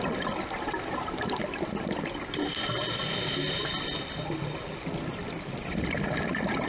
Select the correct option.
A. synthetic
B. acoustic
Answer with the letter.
B